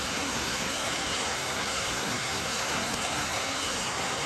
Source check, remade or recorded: remade